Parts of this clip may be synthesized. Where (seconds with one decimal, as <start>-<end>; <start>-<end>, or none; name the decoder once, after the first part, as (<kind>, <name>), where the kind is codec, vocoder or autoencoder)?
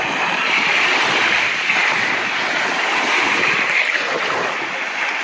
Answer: none